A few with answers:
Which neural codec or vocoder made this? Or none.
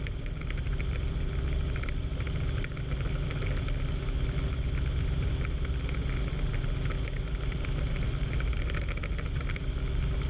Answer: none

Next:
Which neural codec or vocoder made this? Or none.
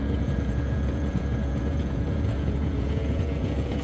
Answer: vocoder, Vocos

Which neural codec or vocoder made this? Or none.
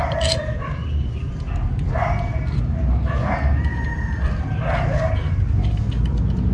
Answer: none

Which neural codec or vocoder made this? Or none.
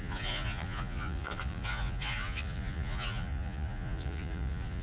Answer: vocoder, Vocos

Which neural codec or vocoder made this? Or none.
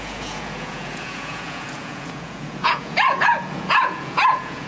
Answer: vocoder, Vocos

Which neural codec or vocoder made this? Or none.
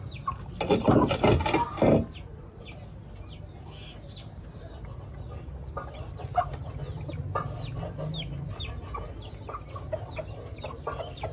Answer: none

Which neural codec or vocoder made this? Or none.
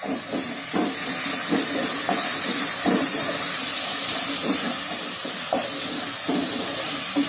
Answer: none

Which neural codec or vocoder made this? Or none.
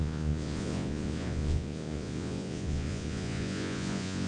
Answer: vocoder, Vocos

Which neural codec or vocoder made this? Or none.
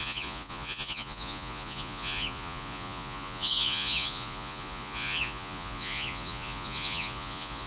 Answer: vocoder, Vocos